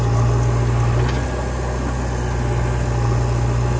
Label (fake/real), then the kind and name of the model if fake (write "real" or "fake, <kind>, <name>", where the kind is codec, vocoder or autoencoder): real